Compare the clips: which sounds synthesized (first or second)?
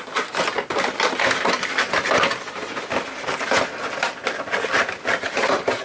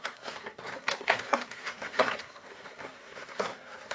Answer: second